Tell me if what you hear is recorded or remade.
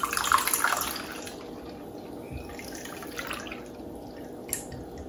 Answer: recorded